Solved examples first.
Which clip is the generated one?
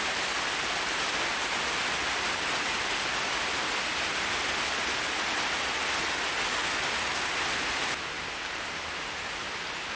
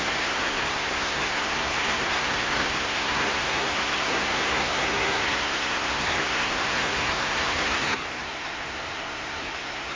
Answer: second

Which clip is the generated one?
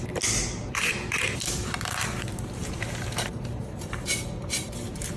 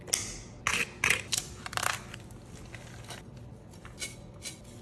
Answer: first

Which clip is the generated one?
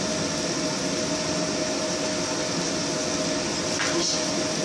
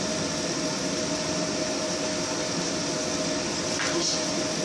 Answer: second